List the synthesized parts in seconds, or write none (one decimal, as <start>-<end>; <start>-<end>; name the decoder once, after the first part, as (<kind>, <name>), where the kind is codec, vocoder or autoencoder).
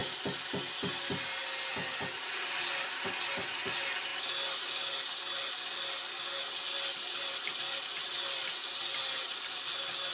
none